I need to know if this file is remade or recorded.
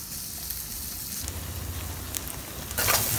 recorded